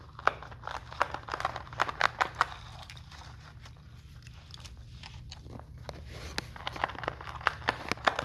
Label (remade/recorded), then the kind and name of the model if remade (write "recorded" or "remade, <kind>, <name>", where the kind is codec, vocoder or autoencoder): recorded